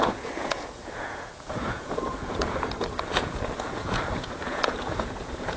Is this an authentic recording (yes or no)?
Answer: no